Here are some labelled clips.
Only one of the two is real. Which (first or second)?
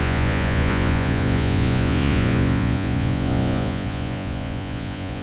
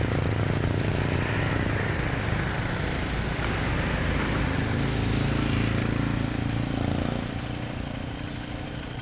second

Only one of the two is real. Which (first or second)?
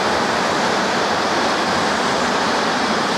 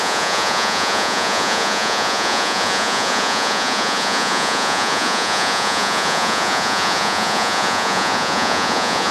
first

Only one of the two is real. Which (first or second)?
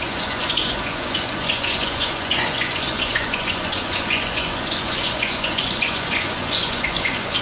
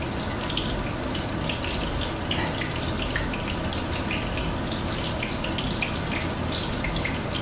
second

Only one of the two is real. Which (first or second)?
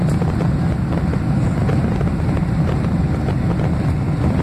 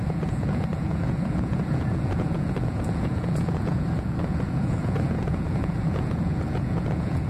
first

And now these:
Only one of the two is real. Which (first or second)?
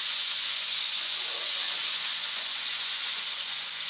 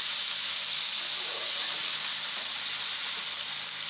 second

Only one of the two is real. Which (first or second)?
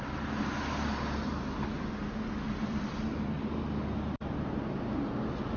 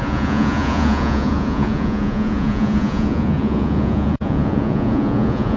first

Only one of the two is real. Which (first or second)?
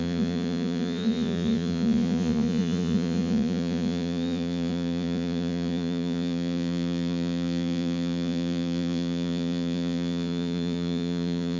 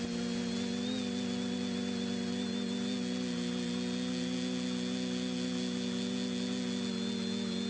second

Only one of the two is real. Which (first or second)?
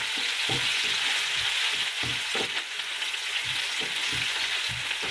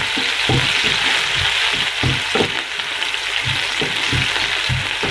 second